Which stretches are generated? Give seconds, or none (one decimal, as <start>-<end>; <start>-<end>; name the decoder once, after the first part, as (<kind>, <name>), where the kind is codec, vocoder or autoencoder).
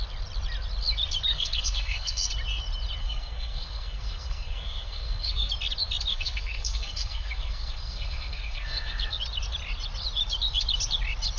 1.3-2.3 (codec, SNAC); 3.0-5.5; 6.1-9.2